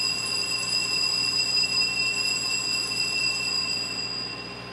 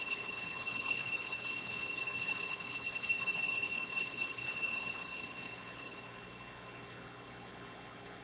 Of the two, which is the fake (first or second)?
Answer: second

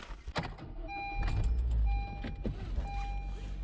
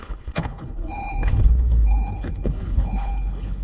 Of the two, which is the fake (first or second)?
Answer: second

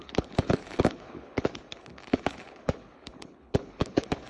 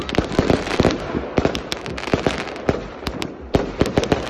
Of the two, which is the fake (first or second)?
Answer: first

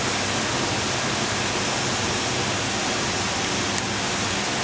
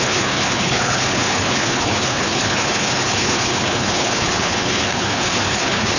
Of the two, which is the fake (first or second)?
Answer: second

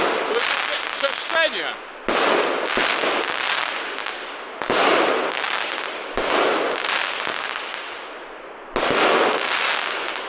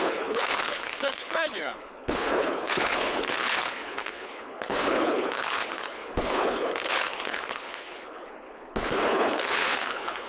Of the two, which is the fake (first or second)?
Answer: second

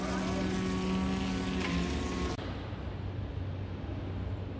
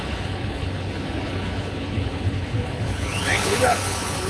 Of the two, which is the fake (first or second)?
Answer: second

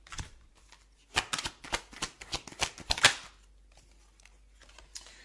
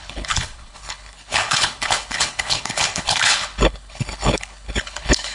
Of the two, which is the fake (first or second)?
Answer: second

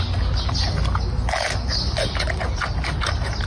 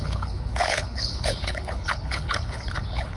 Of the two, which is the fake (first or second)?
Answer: second